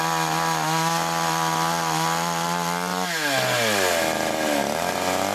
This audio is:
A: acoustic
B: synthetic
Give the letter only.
A